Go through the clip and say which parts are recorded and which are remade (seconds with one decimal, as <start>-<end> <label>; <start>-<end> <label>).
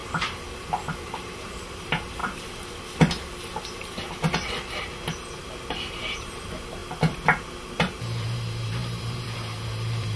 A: 0.0-2.2 remade; 2.2-5.4 recorded; 5.4-6.8 remade; 6.8-7.6 recorded; 7.6-10.2 remade